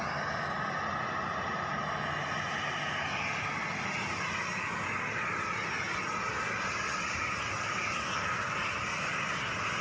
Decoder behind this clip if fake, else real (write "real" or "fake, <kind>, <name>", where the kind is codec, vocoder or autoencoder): real